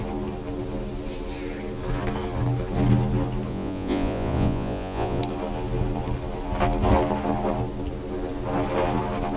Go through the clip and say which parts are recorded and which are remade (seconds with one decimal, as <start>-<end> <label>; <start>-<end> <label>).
0.0-3.5 recorded; 3.5-5.2 remade; 5.2-9.4 recorded